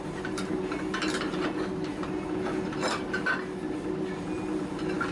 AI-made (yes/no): no